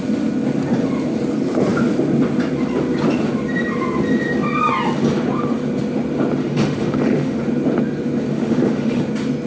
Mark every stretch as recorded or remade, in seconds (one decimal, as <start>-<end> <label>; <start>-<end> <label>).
0.0-6.4 recorded; 6.4-7.4 remade; 7.4-8.3 recorded; 8.3-9.0 remade; 9.0-9.5 recorded